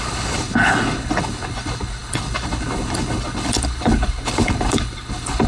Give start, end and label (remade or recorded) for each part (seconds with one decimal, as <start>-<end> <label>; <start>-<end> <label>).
0.0-5.5 remade